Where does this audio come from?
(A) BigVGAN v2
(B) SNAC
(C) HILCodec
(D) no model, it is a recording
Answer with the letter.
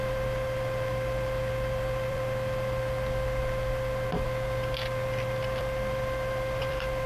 A